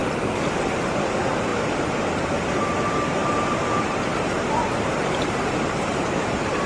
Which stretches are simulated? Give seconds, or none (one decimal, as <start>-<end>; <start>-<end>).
0.7-1.5; 2.5-6.7